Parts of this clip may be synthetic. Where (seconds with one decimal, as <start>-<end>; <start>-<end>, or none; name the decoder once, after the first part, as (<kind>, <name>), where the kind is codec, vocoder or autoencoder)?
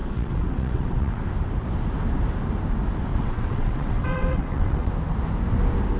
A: 0.0-1.2 (vocoder, WaveNeXt); 3.1-4.9